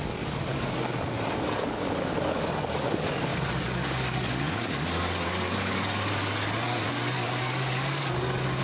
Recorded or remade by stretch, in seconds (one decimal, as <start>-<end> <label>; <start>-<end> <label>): 0.0-6.2 remade; 6.2-6.9 recorded; 6.9-8.6 remade